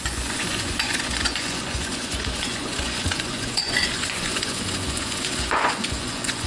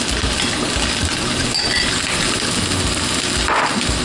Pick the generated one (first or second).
first